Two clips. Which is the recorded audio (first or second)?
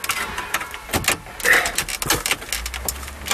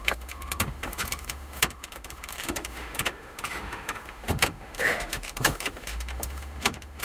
first